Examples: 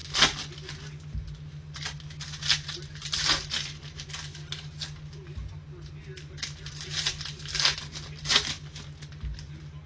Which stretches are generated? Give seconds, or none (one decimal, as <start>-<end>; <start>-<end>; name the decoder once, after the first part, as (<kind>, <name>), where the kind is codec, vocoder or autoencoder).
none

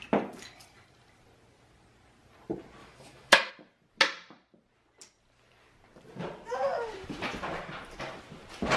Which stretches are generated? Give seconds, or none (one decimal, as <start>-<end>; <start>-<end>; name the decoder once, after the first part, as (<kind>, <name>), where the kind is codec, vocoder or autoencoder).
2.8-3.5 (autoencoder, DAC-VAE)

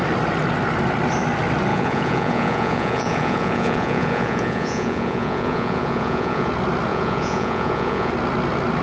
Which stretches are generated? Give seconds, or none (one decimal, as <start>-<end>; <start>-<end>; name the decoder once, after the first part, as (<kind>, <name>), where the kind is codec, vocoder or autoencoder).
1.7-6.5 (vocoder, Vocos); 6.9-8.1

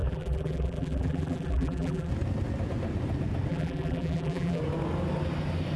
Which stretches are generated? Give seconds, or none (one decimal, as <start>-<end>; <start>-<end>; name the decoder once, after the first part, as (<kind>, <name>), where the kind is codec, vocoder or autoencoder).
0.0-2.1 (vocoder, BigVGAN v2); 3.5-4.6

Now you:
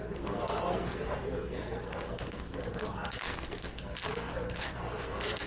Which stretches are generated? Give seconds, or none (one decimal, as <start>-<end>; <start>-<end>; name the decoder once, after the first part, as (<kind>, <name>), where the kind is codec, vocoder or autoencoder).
0.0-5.5 (codec, SNAC)

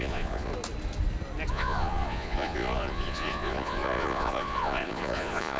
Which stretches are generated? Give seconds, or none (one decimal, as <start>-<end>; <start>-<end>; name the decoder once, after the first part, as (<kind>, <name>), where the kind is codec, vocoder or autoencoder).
0.0-0.5 (vocoder, Vocos); 1.5-5.6

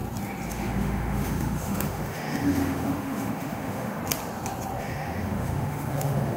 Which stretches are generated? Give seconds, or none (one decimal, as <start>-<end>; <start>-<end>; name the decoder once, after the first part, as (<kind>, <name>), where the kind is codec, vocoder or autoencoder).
0.5-4.0 (autoencoder, DAC-VAE); 4.8-6.4